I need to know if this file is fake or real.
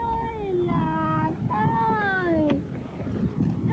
real